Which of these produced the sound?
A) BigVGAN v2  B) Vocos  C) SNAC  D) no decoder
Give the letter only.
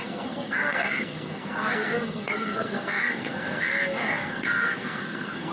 C